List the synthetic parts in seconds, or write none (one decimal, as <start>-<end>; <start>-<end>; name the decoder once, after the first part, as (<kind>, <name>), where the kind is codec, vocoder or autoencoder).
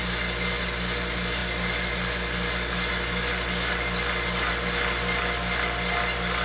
none